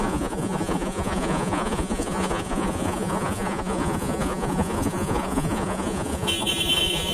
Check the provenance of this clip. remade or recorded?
remade